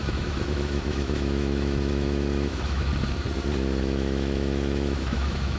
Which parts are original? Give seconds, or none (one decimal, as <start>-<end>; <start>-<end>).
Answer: 2.9-3.8